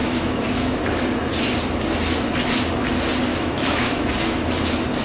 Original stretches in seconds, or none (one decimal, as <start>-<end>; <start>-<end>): 0.8-3.3; 4.1-5.0